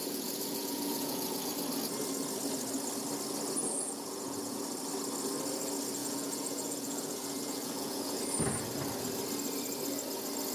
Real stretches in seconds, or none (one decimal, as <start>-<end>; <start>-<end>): 1.5-3.6; 4.6-6.0; 8.2-10.5